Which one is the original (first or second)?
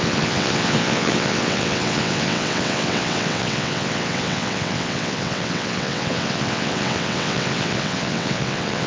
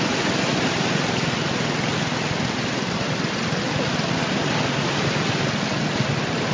second